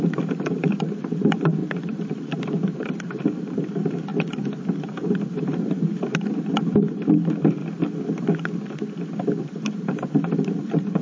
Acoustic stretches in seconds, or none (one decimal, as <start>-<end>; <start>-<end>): 4.1-4.8; 7.6-9.4